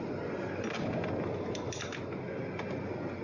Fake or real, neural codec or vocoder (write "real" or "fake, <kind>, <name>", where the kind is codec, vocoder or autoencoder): real